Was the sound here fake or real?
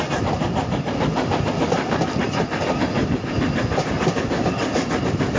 real